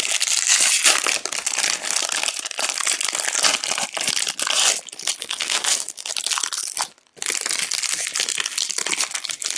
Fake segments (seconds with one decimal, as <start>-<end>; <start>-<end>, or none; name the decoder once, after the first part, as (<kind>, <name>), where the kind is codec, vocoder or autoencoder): 5.2-6.1 (codec, SNAC)